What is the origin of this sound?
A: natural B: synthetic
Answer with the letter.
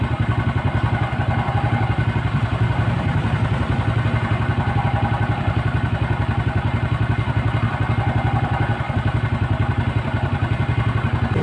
A